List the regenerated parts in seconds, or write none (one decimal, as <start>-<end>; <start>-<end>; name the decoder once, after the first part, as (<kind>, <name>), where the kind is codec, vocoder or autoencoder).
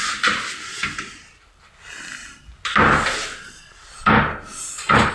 2.2-5.1 (vocoder, BigVGAN v2)